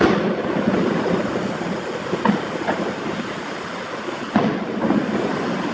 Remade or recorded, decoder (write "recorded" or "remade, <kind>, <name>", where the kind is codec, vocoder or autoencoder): recorded